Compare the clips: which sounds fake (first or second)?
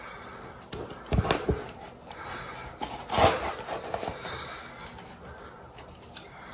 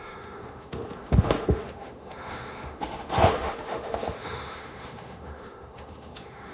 second